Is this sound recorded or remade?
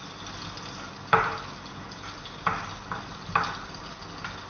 recorded